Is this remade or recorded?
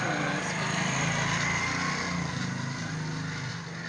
recorded